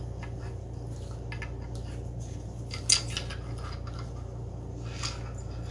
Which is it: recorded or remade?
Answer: recorded